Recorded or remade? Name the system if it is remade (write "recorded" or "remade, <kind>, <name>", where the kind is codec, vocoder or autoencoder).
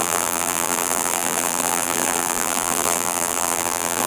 remade, vocoder, BigVGAN v2